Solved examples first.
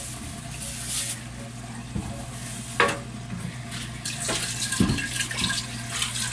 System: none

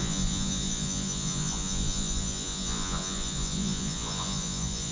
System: vocoder, Vocos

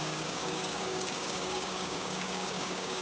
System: codec, DAC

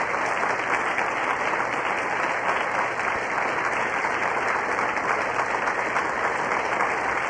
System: none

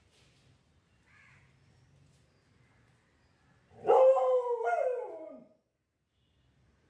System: none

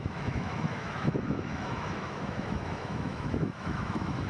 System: autoencoder, DAC-VAE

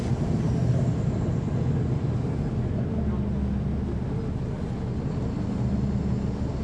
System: none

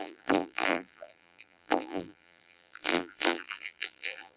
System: vocoder, BigVGAN v2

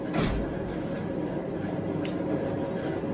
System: none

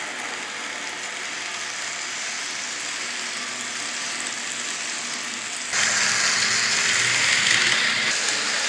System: none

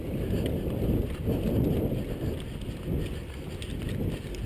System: none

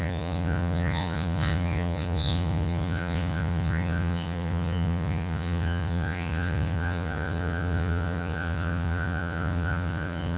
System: vocoder, Vocos